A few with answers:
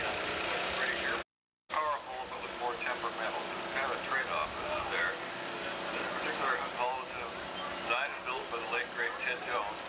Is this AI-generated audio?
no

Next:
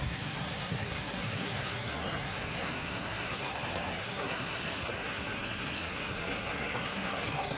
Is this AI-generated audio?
yes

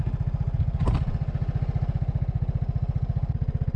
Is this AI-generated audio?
no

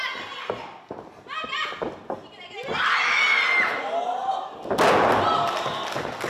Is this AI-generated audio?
no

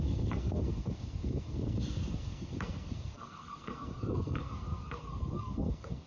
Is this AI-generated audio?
yes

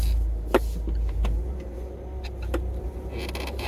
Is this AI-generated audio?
no